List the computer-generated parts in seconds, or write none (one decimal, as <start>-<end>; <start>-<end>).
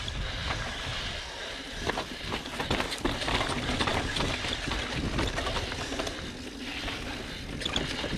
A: none